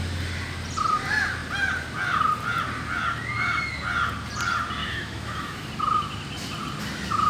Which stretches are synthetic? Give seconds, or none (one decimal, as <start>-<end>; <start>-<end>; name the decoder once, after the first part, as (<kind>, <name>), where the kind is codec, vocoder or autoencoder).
4.8-5.7 (autoencoder, DAC-VAE)